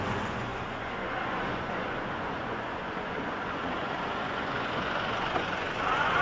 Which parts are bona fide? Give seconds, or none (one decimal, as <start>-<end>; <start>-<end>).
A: none

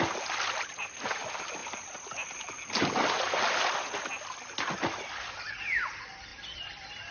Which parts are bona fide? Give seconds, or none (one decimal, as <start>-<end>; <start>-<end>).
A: 0.0-7.1

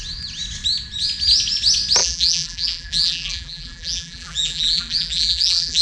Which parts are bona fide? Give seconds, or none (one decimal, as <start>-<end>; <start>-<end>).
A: 0.0-2.0

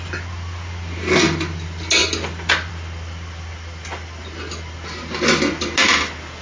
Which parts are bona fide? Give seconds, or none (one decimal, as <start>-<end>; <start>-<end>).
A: 0.0-6.4

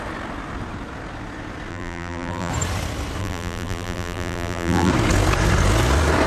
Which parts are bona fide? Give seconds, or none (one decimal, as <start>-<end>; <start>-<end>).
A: 0.0-1.7; 2.5-3.2; 4.9-6.3

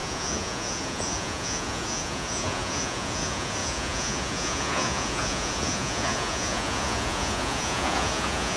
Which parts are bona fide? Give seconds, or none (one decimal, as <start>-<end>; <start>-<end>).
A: none

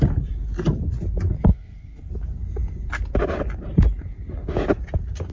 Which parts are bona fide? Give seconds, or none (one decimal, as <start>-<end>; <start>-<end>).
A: 0.0-1.5; 2.1-5.3